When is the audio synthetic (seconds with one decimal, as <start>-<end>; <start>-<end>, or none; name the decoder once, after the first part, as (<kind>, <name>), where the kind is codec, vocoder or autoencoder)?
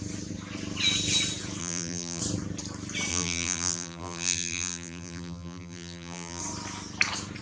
1.6-2.2 (vocoder, BigVGAN v2); 3.1-6.4